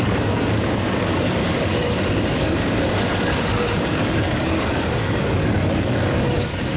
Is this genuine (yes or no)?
no